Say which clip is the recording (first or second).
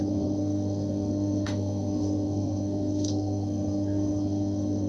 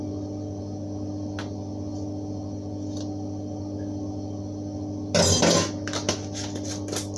second